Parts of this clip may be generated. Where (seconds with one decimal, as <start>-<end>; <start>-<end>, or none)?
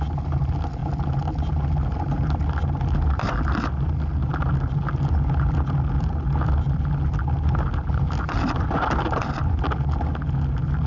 none